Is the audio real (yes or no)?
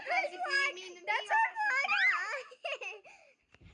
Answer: yes